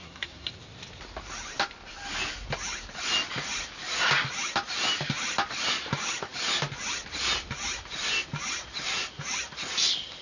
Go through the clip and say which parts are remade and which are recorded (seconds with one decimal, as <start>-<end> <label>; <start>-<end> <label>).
0.0-0.5 remade; 0.5-10.2 recorded